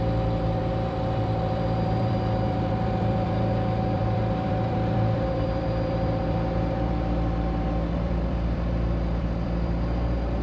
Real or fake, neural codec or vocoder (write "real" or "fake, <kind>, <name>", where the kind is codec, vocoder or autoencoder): fake, vocoder, BigVGAN v2